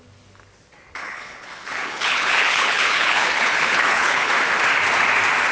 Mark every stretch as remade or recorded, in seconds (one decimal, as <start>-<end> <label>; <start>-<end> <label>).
0.0-1.0 recorded; 1.0-4.3 remade; 4.3-5.5 recorded